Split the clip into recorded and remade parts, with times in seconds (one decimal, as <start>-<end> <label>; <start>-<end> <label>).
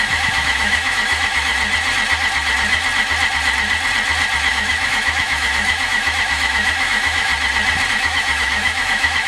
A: 0.0-1.5 remade; 1.5-4.5 recorded; 4.5-7.3 remade; 7.3-7.9 recorded; 7.9-9.3 remade